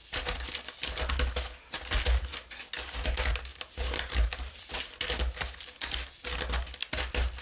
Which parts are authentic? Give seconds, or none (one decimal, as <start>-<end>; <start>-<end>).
0.5-3.5; 4.7-7.4